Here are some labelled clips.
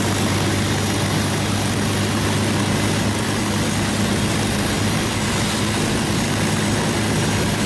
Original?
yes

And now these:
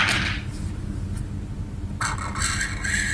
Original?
yes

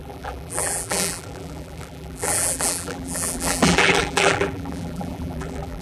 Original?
no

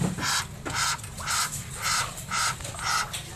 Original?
no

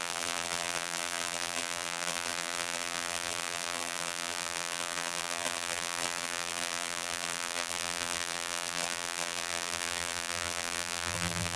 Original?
no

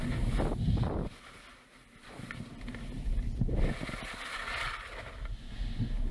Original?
yes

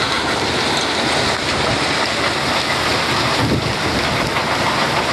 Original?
yes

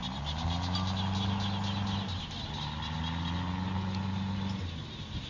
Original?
yes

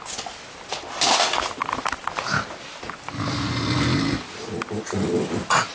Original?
yes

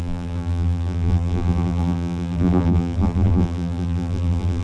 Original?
no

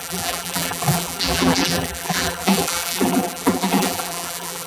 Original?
no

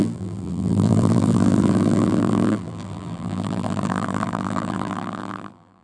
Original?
no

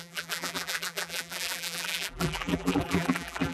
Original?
no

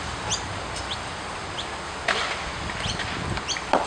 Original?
no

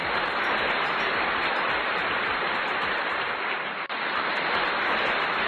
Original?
yes